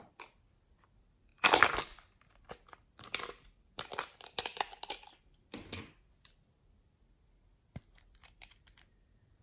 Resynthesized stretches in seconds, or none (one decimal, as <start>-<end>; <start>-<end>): 0.0-9.4